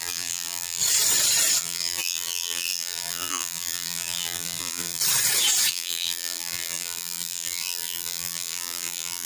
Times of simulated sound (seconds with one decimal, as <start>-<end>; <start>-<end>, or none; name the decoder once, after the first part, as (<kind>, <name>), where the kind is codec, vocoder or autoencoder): 0.0-0.8 (vocoder, BigVGAN v2); 1.6-5.0; 5.7-9.3